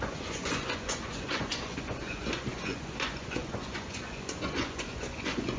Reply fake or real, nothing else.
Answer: fake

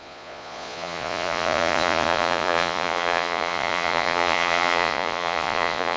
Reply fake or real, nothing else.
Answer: fake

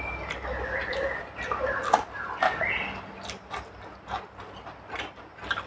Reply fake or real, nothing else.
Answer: real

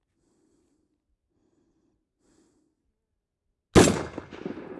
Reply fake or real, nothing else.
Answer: real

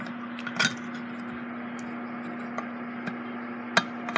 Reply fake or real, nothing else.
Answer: real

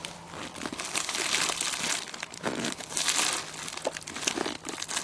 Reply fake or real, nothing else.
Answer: real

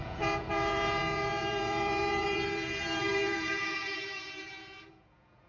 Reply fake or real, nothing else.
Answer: fake